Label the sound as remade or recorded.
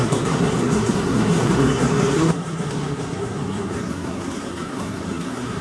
remade